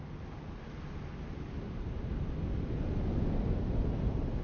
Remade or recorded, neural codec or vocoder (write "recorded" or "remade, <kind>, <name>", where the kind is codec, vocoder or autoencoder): recorded